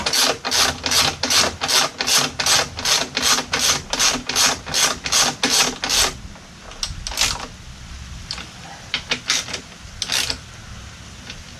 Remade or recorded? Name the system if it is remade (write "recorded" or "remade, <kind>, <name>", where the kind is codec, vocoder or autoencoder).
recorded